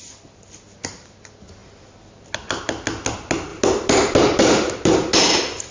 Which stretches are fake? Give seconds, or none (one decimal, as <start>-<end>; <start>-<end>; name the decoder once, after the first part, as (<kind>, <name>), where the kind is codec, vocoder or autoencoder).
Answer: none